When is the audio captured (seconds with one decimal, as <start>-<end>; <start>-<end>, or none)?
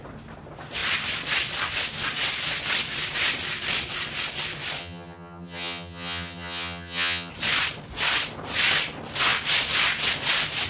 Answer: 0.0-4.8; 7.3-10.7